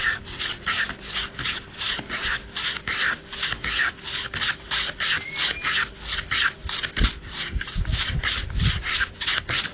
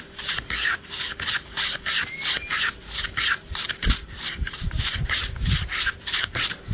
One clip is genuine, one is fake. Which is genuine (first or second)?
first